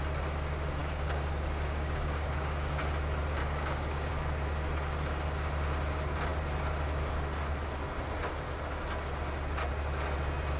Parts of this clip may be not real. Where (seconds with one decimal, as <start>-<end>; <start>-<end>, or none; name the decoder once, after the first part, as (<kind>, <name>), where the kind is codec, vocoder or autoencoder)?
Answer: 0.8-2.8 (codec, DAC); 3.4-4.1